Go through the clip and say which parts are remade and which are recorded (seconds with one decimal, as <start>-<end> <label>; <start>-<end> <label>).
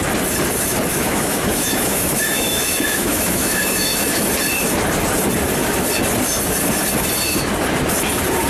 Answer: 0.0-0.9 recorded; 0.9-4.3 remade; 4.3-8.5 recorded